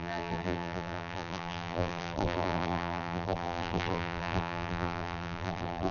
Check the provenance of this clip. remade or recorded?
remade